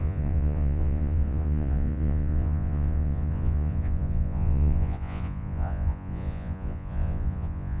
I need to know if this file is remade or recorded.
remade